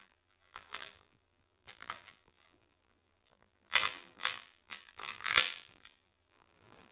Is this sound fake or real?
fake